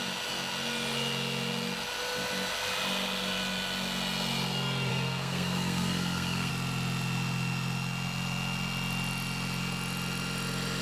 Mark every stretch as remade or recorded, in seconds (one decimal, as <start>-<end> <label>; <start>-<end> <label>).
0.0-4.9 recorded; 4.9-6.5 remade; 6.5-10.8 recorded